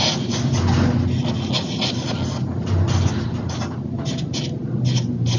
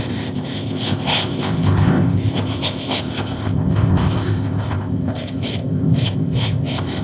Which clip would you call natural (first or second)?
first